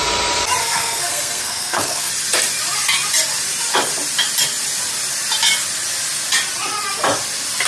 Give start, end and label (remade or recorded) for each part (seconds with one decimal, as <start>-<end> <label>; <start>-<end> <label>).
0.0-0.6 recorded; 0.6-2.1 remade; 2.1-7.7 recorded